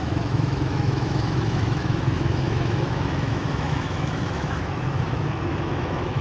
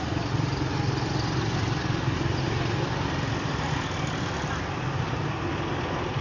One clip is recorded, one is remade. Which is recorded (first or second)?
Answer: second